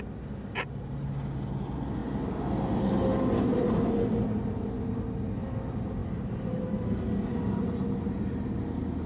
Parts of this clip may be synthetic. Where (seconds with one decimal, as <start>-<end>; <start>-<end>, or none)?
none

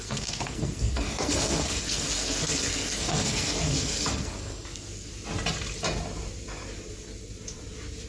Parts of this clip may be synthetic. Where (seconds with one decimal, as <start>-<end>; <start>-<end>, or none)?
0.0-5.1